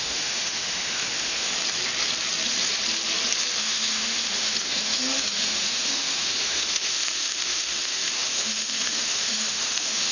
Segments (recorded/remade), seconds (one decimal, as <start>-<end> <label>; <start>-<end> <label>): 0.0-1.5 remade; 1.5-3.6 recorded; 3.6-10.1 remade